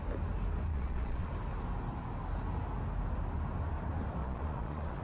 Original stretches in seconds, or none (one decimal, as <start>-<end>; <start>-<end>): 0.0-0.7; 1.3-4.2